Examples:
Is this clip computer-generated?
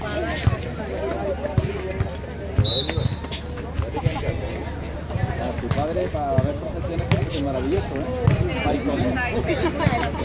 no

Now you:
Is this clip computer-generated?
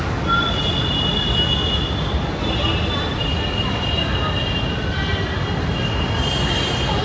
no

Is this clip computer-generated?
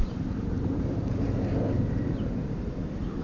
yes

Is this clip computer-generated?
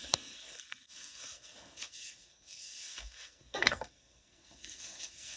yes